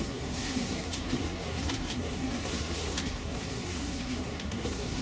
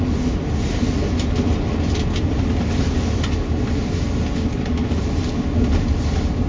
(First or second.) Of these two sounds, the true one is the second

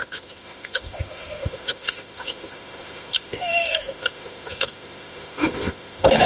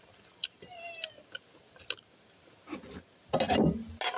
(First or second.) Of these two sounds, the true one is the second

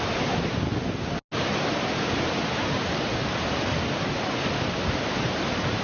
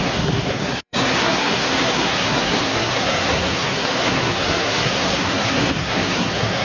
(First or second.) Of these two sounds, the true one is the first